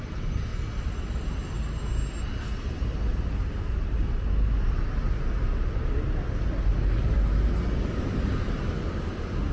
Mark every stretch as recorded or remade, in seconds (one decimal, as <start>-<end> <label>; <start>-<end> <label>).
0.0-9.5 recorded